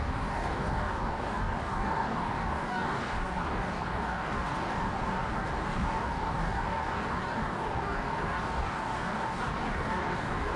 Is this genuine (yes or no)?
no